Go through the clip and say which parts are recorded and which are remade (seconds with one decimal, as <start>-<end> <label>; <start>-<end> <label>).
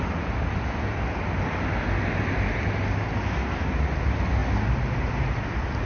0.0-5.9 recorded